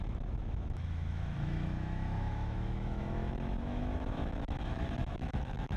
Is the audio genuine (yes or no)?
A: no